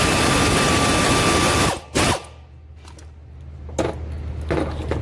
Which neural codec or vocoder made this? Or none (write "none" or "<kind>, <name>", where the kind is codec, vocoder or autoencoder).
none